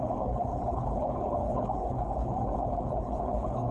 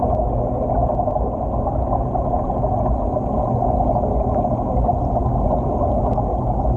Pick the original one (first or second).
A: second